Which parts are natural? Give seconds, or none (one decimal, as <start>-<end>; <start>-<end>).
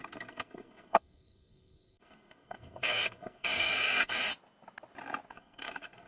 4.3-5.3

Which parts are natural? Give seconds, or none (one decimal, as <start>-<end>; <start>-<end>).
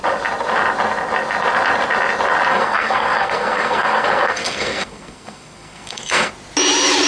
0.0-2.5; 6.3-7.1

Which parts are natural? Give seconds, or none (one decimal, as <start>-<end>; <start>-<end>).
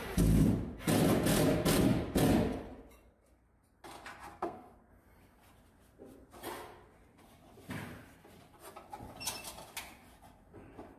0.0-4.3; 4.9-11.0